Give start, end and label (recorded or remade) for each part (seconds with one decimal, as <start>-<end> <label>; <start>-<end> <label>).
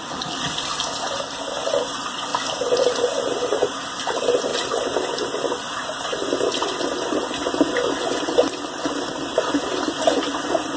0.0-10.8 recorded